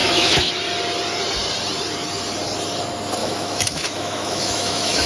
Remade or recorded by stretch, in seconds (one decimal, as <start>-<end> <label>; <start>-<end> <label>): 0.0-0.5 remade; 0.5-3.2 recorded; 3.2-5.1 remade